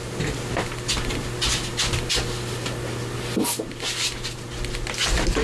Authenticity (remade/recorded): recorded